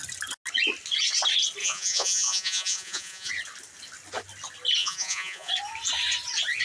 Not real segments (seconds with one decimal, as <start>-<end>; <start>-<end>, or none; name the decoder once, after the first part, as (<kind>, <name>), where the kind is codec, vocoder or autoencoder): 1.6-3.3 (vocoder, Vocos); 4.8-5.5